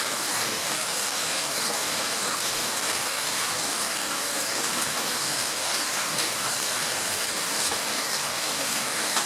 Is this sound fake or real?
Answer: fake